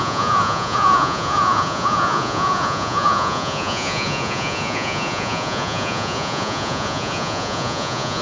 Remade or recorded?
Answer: remade